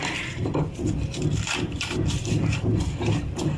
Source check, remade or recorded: remade